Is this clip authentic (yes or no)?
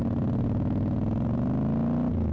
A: yes